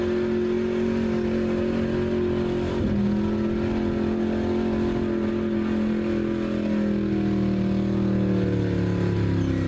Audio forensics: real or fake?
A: real